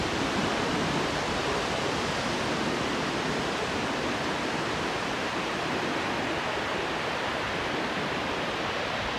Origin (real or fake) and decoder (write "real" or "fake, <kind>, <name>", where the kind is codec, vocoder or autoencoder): real